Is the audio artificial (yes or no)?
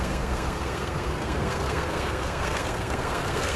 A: yes